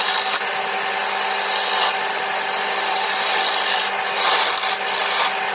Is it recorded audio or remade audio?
recorded